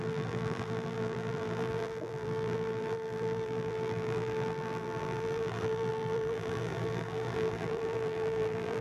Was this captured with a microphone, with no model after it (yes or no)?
no